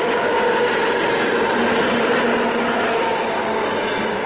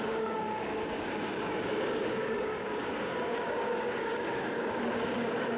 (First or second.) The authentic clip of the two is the first